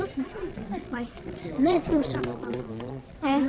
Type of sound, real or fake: fake